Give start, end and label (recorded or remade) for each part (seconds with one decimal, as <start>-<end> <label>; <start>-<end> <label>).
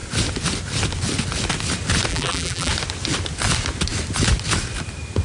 0.0-2.1 recorded; 2.1-2.7 remade; 2.7-5.2 recorded